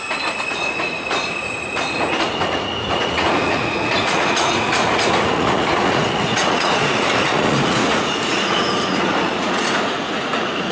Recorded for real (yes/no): no